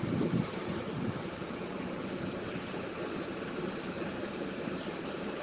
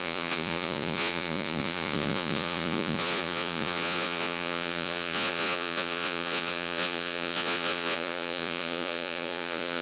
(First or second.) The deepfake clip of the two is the second